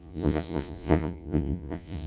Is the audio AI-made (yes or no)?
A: yes